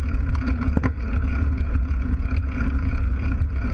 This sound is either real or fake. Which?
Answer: fake